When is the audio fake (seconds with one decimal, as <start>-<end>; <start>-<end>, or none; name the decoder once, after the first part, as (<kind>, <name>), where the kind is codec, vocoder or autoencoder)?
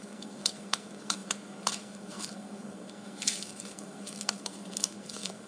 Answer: 0.0-5.5 (codec, SNAC)